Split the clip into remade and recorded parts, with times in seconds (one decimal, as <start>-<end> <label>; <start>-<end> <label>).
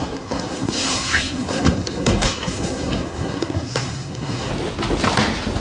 0.0-4.5 remade; 4.5-5.6 recorded